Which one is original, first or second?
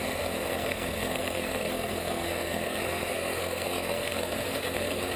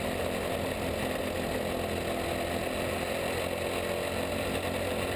second